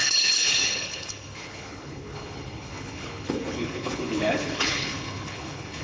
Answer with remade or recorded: remade